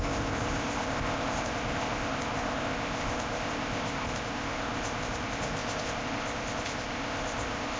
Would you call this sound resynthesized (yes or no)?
yes